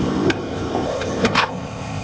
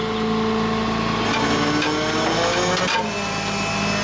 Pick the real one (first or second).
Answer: second